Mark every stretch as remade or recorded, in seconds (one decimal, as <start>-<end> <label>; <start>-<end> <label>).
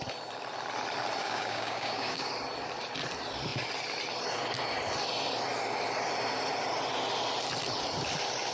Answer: 0.0-1.2 recorded; 1.2-2.3 remade; 2.3-8.5 recorded